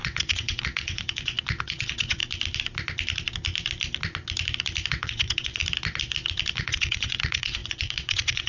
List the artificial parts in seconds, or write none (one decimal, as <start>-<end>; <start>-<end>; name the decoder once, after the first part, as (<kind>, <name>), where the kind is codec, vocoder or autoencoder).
0.0-2.2 (vocoder, WaveNeXt); 4.9-5.6; 6.5-8.5